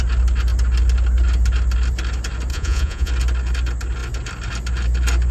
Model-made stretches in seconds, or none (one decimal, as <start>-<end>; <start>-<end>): 2.5-3.1